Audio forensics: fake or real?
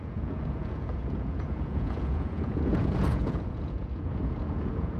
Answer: fake